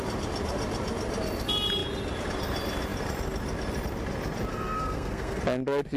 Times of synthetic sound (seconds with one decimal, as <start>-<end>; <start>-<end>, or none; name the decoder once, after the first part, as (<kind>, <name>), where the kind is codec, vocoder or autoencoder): 4.5-5.4 (codec, SNAC)